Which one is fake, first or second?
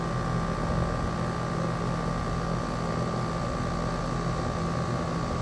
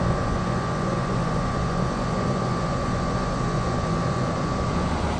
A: second